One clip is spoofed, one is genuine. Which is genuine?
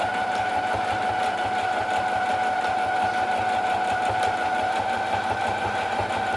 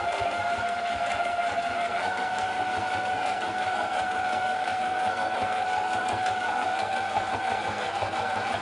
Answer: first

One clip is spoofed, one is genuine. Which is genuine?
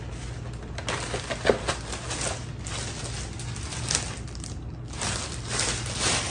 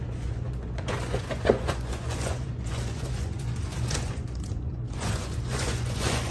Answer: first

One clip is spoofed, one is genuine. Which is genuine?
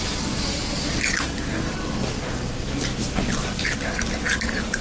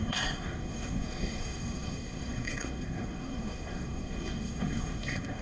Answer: first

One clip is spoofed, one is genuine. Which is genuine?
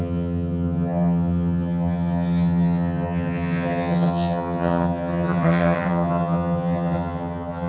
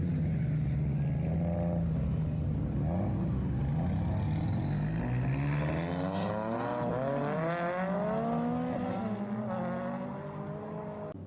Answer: second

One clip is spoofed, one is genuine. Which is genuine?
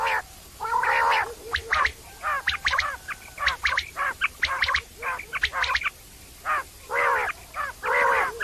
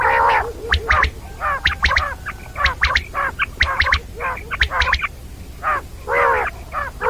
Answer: second